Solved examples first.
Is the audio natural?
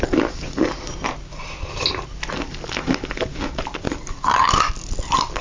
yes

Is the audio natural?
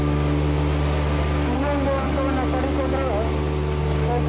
yes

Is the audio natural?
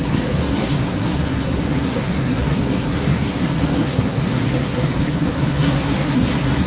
no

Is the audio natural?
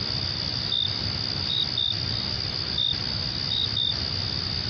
yes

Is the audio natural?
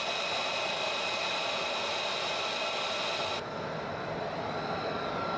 yes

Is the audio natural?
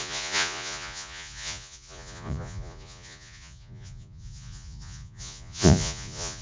no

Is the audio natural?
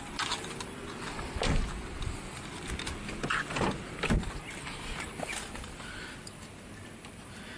yes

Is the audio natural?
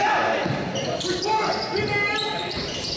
yes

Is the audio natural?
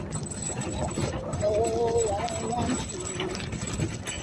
yes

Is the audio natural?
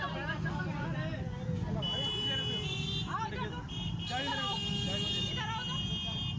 yes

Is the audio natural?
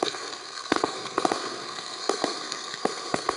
no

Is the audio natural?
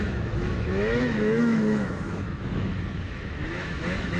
no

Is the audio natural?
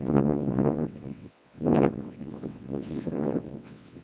no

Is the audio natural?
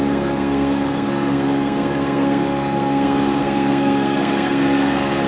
no